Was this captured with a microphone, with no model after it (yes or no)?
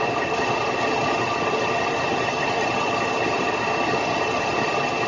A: yes